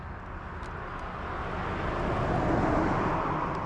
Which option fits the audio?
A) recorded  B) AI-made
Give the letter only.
A